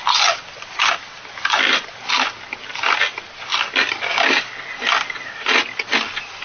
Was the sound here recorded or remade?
recorded